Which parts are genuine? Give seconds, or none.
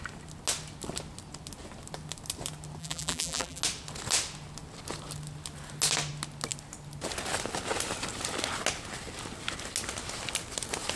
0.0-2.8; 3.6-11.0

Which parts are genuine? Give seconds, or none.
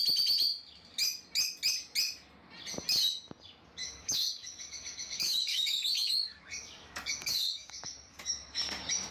0.0-3.8; 8.6-9.1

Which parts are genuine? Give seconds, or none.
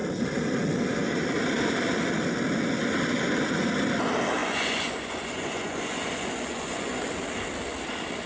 0.0-4.4; 7.0-8.3